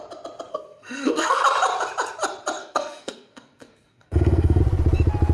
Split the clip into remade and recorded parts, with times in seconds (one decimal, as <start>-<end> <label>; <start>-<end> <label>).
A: 0.0-0.5 recorded; 0.5-1.4 remade; 1.4-2.6 recorded; 2.6-4.6 remade; 4.6-5.3 recorded